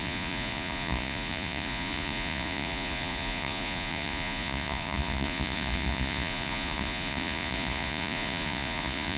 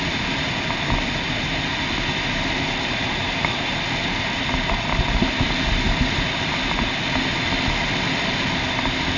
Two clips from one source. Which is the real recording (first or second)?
second